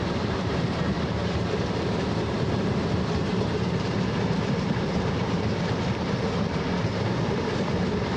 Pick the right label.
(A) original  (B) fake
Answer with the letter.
B